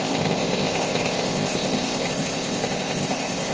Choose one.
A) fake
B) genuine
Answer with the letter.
A